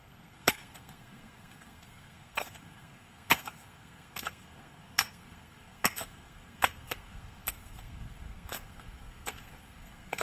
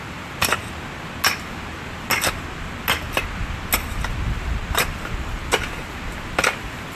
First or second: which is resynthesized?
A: first